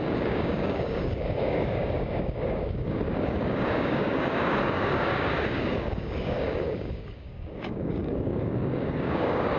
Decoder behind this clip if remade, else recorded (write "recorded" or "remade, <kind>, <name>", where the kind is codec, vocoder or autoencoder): remade, codec, DAC